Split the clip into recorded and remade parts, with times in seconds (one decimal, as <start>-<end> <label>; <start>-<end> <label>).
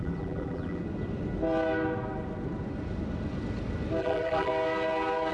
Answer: 0.0-0.8 remade; 0.8-4.0 recorded; 4.0-4.5 remade; 4.5-5.3 recorded